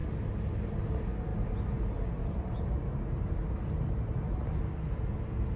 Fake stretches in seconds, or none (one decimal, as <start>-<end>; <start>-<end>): none